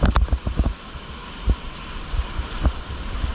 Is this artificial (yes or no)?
no